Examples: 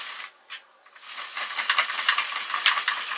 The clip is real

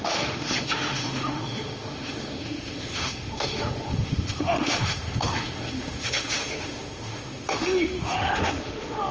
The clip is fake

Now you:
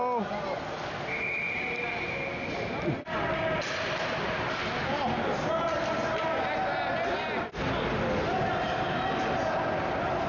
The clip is real